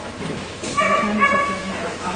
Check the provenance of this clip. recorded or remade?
remade